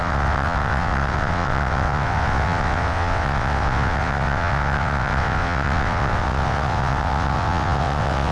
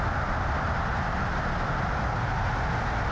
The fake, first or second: first